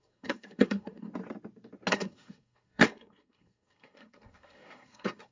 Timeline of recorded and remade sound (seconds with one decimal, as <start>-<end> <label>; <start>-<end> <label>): 0.0-1.1 remade; 1.1-1.9 recorded; 1.9-5.3 remade